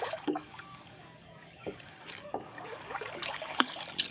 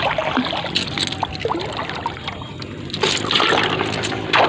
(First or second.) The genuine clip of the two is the second